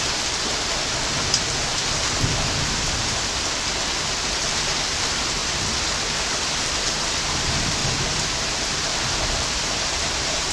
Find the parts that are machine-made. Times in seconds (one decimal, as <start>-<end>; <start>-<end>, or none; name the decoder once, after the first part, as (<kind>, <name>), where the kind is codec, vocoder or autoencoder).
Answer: 0.0-0.5 (vocoder, BigVGAN v2); 4.4-5.4; 6.5-7.8; 8.6-10.5